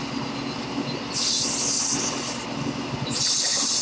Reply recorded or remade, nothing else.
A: recorded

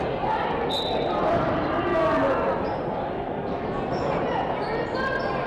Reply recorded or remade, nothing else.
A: recorded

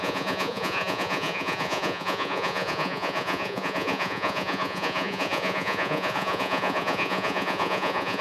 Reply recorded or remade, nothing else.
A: remade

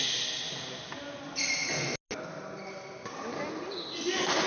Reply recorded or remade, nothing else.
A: recorded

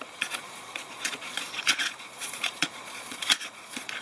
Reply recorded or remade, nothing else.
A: remade